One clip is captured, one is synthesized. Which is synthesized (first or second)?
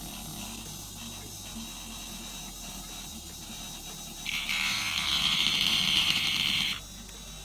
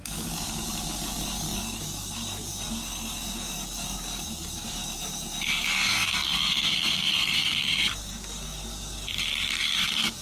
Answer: second